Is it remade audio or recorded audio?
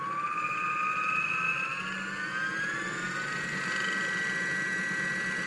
recorded